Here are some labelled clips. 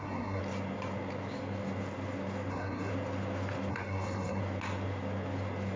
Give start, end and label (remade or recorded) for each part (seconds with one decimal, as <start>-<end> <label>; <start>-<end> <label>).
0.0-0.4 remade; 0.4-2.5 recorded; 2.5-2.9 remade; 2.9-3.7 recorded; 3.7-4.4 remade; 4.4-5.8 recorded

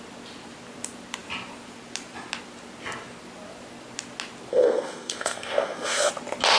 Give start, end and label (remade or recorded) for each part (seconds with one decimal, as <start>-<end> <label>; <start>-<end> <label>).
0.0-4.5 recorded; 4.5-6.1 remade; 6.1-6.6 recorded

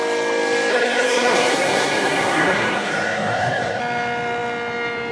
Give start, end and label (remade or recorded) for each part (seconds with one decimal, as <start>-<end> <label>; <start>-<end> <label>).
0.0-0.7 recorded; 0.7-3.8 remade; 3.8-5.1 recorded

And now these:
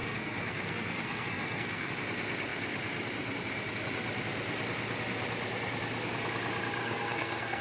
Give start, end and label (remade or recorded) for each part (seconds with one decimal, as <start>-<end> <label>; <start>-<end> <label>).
0.0-1.9 remade; 1.9-6.8 recorded; 6.8-7.6 remade

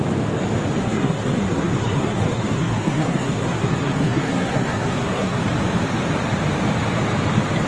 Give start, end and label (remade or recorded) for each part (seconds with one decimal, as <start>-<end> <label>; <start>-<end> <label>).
0.0-0.8 recorded; 0.8-5.4 remade; 5.4-7.7 recorded

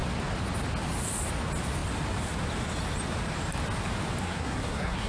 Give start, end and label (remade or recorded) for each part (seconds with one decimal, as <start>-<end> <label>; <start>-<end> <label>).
0.0-4.2 recorded; 4.2-5.1 remade